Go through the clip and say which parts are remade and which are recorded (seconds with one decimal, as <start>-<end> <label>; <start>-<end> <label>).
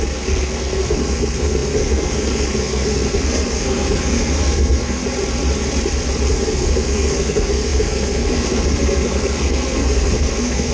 0.0-5.0 remade; 5.0-6.3 recorded; 6.3-10.7 remade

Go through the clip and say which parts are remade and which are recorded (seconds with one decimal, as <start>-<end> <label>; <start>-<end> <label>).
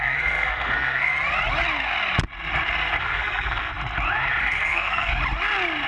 0.0-1.1 remade; 1.1-3.0 recorded; 3.0-3.7 remade; 3.7-4.4 recorded; 4.4-5.1 remade; 5.1-5.9 recorded